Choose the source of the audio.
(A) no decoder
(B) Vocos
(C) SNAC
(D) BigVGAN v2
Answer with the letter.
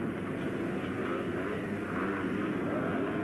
A